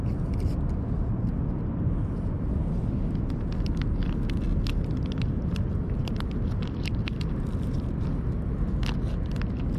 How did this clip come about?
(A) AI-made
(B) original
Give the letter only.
B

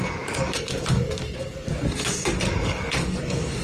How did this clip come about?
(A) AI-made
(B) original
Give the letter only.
A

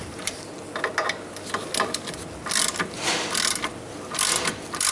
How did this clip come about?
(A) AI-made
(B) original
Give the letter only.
B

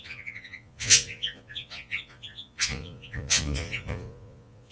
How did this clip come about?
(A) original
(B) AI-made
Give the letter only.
B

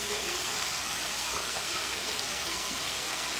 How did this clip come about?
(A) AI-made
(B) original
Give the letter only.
A